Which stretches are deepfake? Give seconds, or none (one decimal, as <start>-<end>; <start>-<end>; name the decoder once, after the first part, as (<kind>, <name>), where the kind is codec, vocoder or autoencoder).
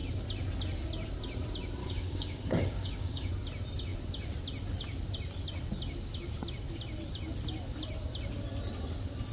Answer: 1.8-3.3 (codec, DAC)